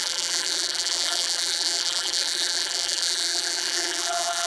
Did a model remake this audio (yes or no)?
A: yes